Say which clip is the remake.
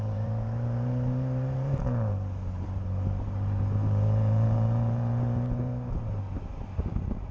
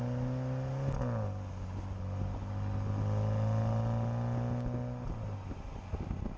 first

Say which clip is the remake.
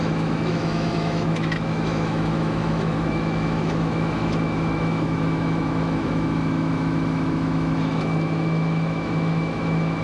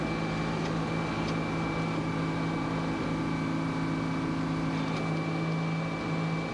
first